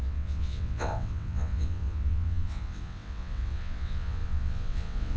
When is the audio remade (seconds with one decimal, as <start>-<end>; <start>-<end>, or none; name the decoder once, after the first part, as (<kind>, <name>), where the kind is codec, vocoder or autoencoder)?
0.0-5.2 (vocoder, WaveNeXt)